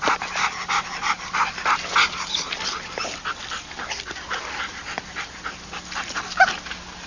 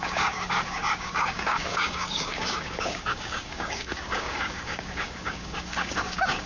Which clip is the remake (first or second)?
second